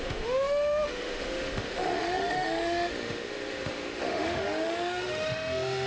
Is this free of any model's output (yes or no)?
no